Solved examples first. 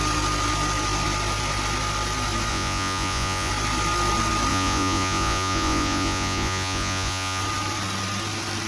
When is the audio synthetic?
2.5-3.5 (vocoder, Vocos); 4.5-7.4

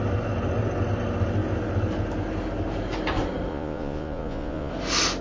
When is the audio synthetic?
3.5-4.7 (vocoder, Vocos)

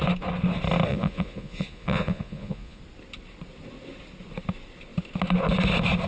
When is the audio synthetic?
0.9-2.8 (vocoder, Vocos)

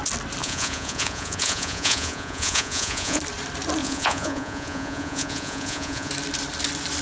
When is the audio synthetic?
0.4-3.2 (vocoder, Vocos); 3.8-6.1